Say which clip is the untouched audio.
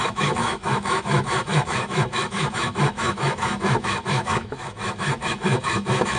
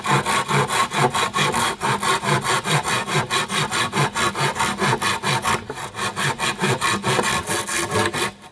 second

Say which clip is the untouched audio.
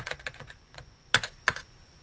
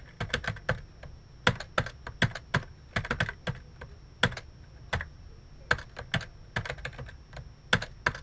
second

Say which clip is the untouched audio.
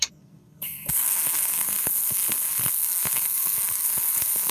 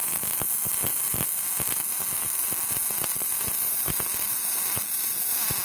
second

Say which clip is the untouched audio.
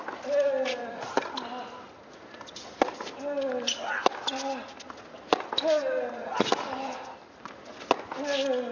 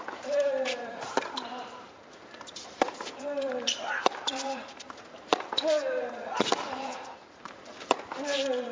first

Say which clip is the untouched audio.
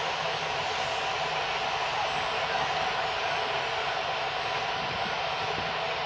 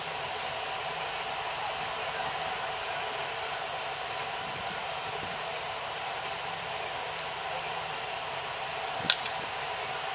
first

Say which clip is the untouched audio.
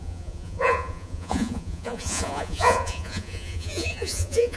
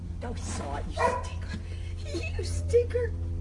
second